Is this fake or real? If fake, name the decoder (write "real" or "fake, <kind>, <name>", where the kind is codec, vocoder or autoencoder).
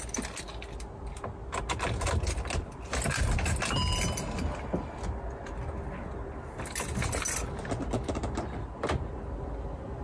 real